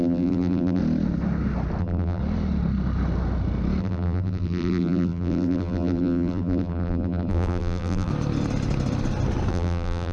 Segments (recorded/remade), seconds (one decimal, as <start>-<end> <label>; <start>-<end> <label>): 0.0-0.8 remade; 0.8-1.8 recorded; 1.8-2.2 remade; 2.2-3.8 recorded; 3.8-8.1 remade; 8.1-9.5 recorded; 9.5-10.1 remade